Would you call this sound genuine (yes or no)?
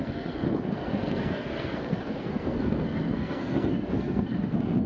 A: no